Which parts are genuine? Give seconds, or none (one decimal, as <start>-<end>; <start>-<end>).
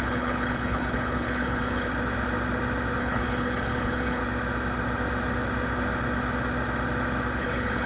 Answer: 1.9-3.0; 4.2-7.4